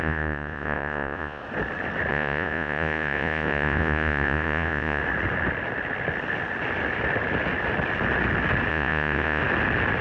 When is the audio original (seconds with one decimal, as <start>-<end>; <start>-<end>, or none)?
1.4-2.1; 5.0-8.7; 9.4-10.0